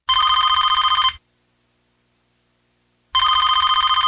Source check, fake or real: real